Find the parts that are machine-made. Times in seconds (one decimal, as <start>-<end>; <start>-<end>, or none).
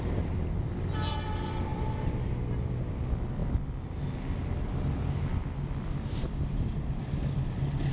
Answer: none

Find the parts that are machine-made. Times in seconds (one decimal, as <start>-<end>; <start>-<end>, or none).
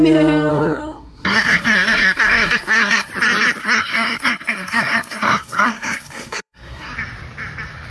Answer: 0.5-3.1; 3.6-6.9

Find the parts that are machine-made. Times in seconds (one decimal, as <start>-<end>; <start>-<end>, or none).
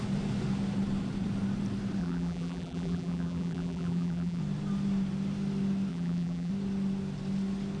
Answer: 2.0-4.4; 5.9-6.5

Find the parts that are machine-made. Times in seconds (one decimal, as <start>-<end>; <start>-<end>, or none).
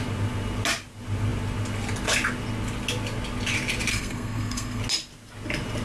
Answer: 3.9-4.8